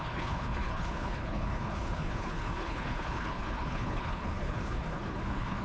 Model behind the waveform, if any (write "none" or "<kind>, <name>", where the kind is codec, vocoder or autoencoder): codec, HILCodec